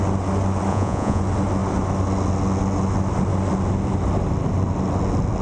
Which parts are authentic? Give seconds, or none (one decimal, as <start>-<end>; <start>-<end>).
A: 0.0-0.7; 1.2-5.4